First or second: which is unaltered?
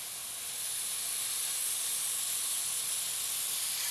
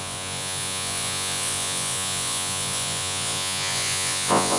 first